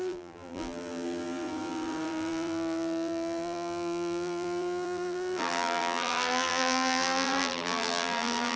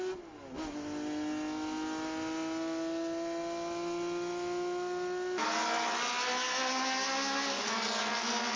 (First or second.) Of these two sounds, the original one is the second